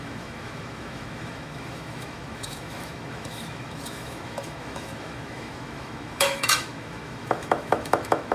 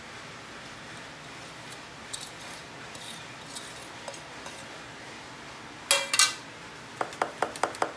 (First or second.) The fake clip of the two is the first